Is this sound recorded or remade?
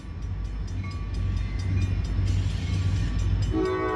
recorded